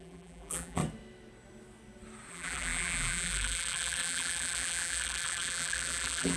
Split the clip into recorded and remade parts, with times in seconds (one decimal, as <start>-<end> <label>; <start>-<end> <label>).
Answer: 0.0-0.8 remade; 0.8-2.3 recorded; 2.3-6.4 remade